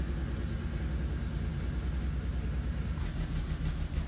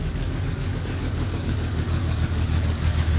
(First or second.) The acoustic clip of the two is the first